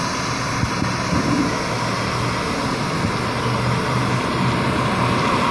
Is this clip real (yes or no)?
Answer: yes